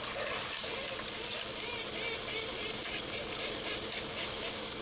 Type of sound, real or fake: real